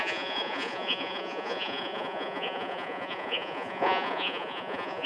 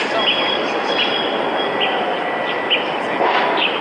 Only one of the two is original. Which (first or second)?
second